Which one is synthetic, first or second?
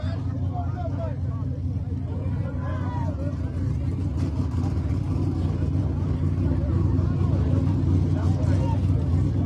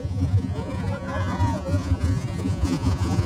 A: second